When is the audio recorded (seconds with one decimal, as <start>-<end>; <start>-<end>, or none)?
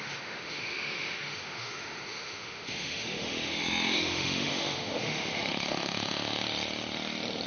6.4-7.5